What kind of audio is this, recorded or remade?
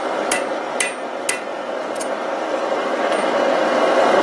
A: recorded